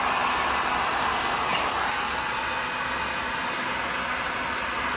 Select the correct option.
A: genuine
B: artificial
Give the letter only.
A